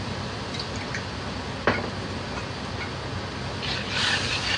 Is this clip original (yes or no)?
yes